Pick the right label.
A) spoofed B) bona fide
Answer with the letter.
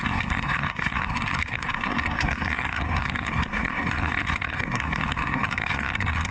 A